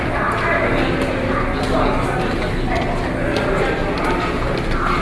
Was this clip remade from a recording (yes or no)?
no